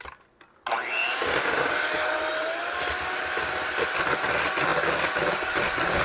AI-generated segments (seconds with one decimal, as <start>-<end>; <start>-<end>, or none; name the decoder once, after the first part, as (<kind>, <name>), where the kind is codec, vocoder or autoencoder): none